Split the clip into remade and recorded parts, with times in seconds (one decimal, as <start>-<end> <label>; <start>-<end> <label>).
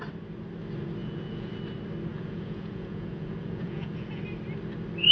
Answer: 0.0-1.0 recorded; 1.0-1.5 remade; 1.5-2.1 recorded; 2.1-4.2 remade; 4.2-5.1 recorded